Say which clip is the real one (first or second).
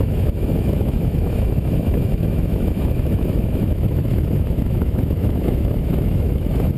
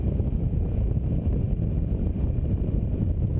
second